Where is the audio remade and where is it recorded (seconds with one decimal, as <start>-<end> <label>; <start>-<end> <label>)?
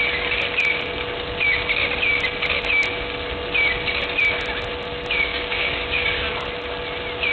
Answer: 0.0-5.3 recorded; 5.3-6.2 remade; 6.2-7.3 recorded